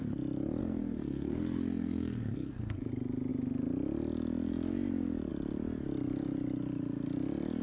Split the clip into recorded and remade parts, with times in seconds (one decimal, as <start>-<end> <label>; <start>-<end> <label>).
0.0-0.6 recorded; 0.6-2.9 remade; 2.9-7.6 recorded

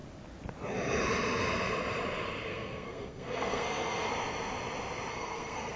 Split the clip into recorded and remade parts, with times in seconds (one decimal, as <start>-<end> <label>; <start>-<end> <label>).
0.0-2.5 recorded; 2.5-4.1 remade; 4.1-5.1 recorded; 5.1-5.8 remade

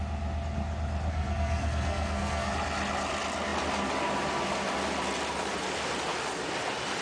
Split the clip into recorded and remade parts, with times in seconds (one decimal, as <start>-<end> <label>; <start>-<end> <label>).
0.0-1.1 recorded; 1.1-2.5 remade; 2.5-7.0 recorded

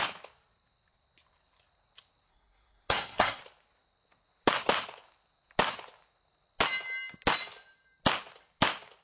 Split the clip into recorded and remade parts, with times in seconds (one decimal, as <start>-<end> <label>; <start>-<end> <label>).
0.0-2.3 recorded; 2.3-3.4 remade; 3.4-9.0 recorded

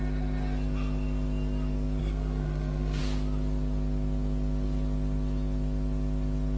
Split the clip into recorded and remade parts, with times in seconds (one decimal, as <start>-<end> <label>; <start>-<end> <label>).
0.0-2.0 recorded; 2.0-3.0 remade; 3.0-6.6 recorded

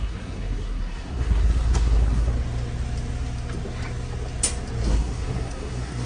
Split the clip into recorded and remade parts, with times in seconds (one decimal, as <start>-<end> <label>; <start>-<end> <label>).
0.0-2.3 remade; 2.3-4.9 recorded; 4.9-6.1 remade

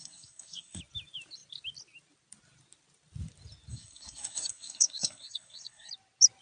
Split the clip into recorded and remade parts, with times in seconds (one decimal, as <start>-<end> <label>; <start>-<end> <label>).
0.0-0.8 remade; 0.8-3.7 recorded; 3.7-5.9 remade; 5.9-6.4 recorded

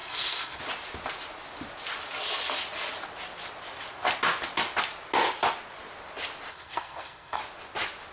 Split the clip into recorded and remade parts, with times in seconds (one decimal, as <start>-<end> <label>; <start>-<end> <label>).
0.0-0.6 remade; 0.6-6.5 recorded; 6.5-7.4 remade; 7.4-8.1 recorded